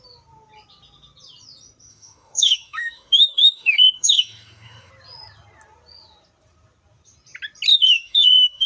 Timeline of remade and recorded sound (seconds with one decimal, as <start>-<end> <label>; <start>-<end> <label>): 0.0-1.9 recorded; 1.9-4.9 remade; 4.9-7.7 recorded; 7.7-8.7 remade